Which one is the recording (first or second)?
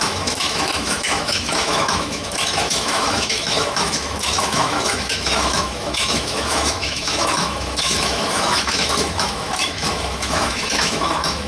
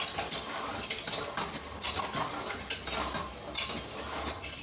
second